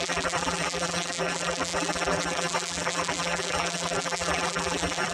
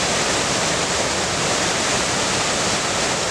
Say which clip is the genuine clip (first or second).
second